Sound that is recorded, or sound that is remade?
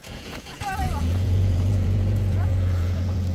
remade